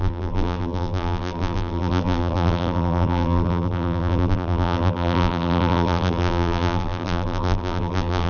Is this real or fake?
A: fake